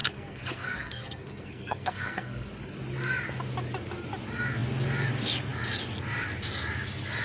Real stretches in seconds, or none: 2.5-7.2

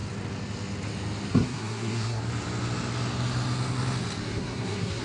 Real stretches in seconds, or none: 0.0-1.3; 2.2-4.2

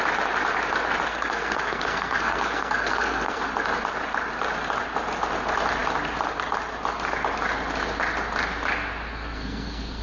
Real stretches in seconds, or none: 0.0-1.1; 3.4-9.1

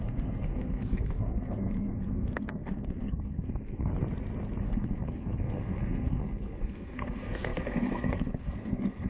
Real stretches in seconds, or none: 3.9-4.6

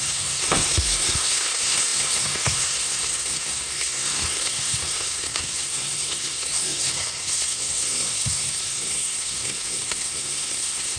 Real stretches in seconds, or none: none

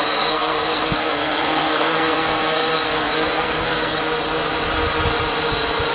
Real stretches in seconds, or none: 4.0-5.9

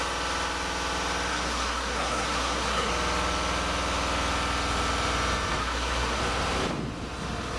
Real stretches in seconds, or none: 0.0-1.3; 2.9-5.6; 6.2-7.6

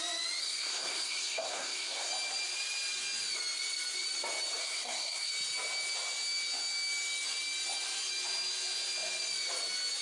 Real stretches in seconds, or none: 0.0-0.4; 2.1-4.6; 5.3-10.0